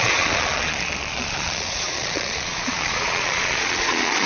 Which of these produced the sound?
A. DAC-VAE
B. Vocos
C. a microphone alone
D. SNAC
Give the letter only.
B